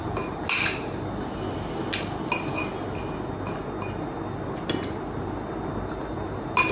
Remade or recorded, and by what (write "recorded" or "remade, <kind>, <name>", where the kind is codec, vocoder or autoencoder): recorded